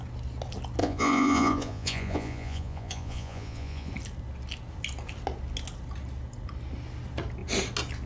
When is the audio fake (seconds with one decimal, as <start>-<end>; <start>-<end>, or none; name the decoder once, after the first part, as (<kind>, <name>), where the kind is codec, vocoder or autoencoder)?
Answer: 0.8-3.9 (vocoder, Vocos)